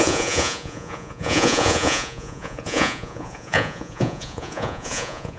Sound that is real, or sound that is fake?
fake